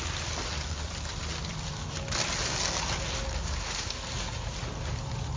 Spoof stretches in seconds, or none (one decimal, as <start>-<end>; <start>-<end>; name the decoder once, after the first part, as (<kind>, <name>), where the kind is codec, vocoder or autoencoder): none